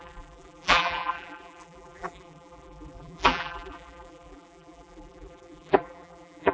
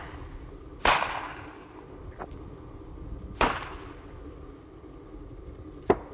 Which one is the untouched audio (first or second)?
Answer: second